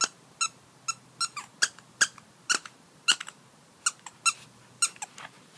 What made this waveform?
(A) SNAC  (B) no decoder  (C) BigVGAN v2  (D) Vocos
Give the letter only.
B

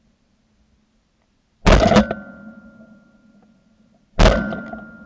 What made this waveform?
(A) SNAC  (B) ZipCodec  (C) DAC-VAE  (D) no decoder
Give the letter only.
D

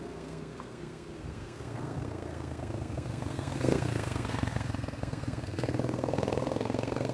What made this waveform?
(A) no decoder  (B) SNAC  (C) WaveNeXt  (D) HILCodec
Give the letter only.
B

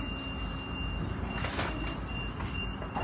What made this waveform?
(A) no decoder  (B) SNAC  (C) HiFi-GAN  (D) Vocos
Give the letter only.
A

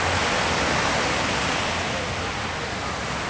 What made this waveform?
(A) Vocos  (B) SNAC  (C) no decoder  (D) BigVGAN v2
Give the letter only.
C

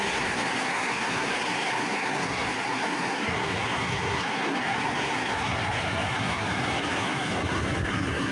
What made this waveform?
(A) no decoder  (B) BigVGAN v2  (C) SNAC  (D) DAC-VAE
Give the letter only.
C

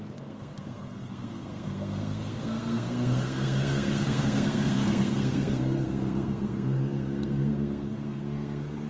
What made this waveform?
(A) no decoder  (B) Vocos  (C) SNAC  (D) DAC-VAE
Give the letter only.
C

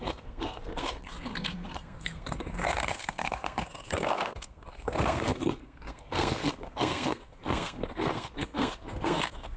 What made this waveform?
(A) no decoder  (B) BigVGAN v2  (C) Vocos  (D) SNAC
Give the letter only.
D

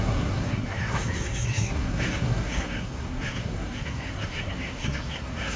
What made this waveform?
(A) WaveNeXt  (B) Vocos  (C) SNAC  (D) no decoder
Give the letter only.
C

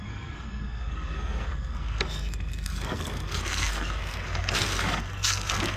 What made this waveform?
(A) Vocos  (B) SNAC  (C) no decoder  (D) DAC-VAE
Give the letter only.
B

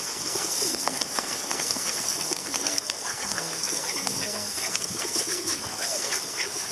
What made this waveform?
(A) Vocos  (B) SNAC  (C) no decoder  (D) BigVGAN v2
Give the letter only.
B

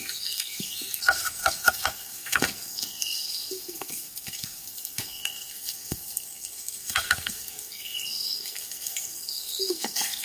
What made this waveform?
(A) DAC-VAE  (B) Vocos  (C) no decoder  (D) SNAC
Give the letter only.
D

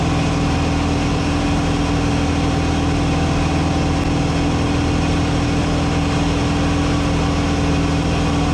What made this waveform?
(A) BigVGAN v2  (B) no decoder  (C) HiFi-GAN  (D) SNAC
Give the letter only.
B